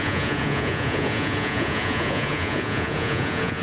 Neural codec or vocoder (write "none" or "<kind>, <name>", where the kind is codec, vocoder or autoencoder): vocoder, Vocos